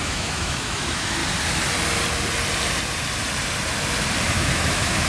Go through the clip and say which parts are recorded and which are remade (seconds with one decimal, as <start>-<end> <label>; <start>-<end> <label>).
0.0-1.2 remade; 1.2-4.3 recorded; 4.3-5.1 remade